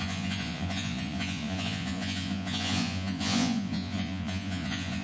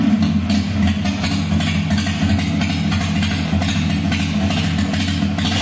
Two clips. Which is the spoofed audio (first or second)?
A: first